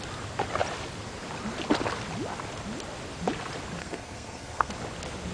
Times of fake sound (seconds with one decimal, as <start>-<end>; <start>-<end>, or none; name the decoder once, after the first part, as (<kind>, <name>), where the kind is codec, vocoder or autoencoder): 3.8-4.7 (codec, SNAC)